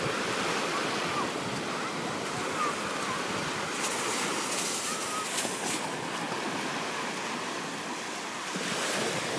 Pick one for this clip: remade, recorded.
recorded